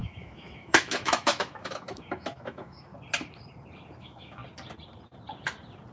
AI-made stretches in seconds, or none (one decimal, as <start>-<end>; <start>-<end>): 0.0-2.9; 4.0-4.4